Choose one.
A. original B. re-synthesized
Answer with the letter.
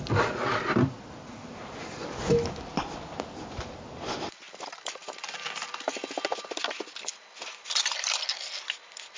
A